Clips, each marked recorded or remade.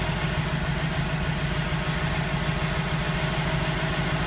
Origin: recorded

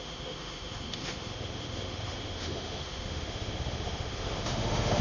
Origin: remade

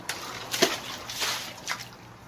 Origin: recorded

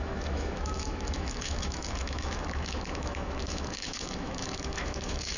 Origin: remade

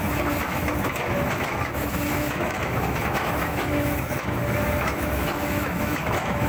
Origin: remade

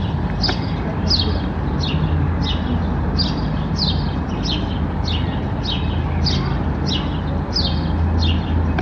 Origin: recorded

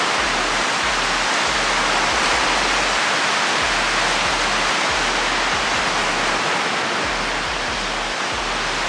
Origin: recorded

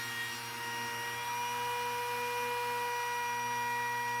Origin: recorded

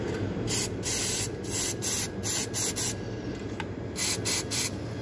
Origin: recorded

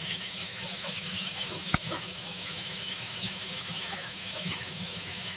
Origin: remade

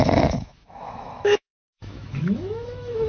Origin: remade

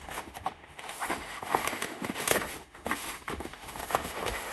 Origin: remade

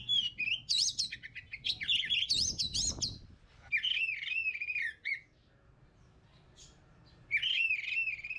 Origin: recorded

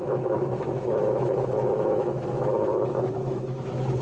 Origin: remade